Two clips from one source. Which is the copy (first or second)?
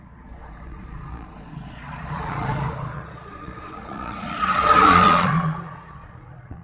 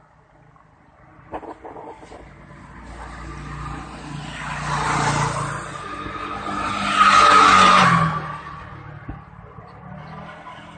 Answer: first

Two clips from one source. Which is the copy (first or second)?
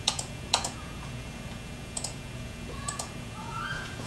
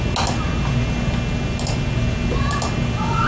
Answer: first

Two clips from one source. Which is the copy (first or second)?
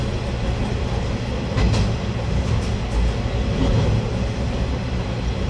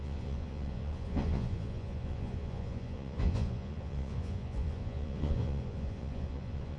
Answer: second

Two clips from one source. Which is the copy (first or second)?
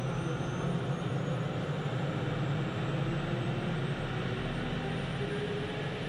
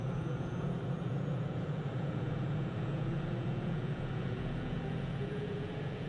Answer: second